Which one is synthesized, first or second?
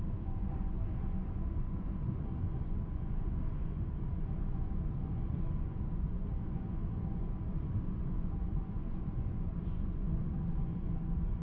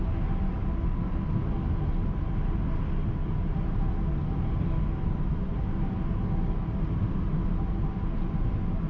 first